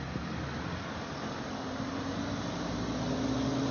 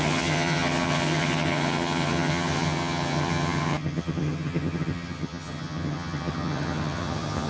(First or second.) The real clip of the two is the first